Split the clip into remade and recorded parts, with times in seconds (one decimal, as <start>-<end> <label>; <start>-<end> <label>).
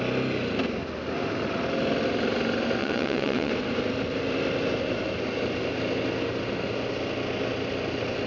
0.0-2.8 recorded; 2.8-3.5 remade; 3.5-8.3 recorded